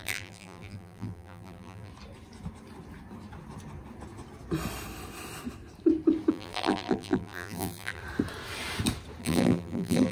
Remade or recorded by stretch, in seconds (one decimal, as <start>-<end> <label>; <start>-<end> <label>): 0.0-1.9 remade; 1.9-6.3 recorded; 6.3-8.0 remade; 8.0-9.2 recorded; 9.2-10.1 remade